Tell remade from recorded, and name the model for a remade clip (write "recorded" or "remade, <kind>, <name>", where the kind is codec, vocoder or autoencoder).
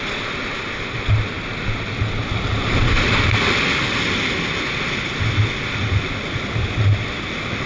recorded